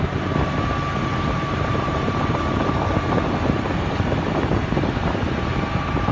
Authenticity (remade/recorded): remade